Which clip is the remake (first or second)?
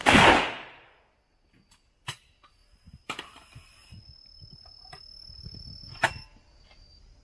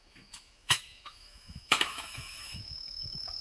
second